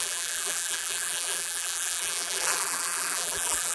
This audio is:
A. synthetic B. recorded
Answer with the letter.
A